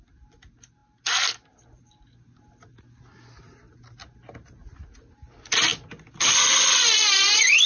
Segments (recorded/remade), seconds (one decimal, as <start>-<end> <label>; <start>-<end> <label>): 0.0-7.7 recorded

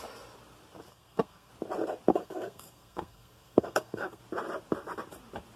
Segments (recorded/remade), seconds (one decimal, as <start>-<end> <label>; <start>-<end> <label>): 0.0-0.9 recorded; 0.9-1.5 remade; 1.5-2.1 recorded; 2.1-4.2 remade; 4.2-5.6 recorded

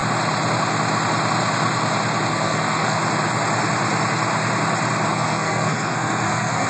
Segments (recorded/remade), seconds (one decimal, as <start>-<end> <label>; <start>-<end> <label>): 0.0-2.3 recorded; 2.3-3.0 remade; 3.0-5.1 recorded; 5.1-6.7 remade

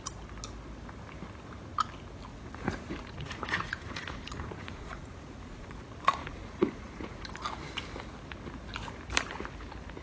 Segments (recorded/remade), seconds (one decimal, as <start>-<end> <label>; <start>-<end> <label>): 0.0-2.3 recorded; 2.3-5.8 remade; 5.8-6.2 recorded; 6.2-7.2 remade; 7.2-10.0 recorded